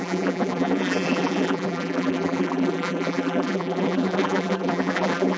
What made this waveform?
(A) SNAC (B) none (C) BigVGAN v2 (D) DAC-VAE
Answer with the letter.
C